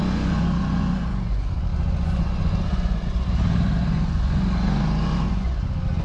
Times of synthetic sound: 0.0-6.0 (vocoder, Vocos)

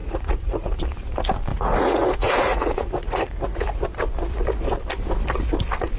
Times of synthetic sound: 0.0-0.8 (vocoder, Vocos); 1.5-3.8